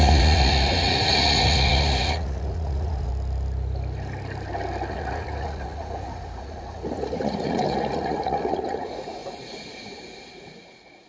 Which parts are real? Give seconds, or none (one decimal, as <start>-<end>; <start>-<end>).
3.1-4.9